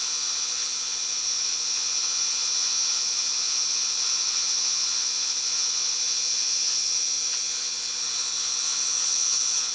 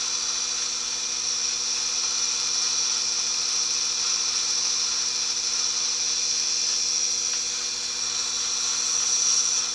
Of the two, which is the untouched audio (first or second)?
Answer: second